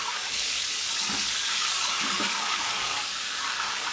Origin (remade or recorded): remade